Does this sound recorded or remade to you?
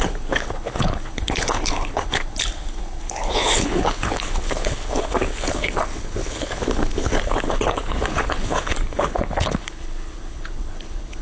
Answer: remade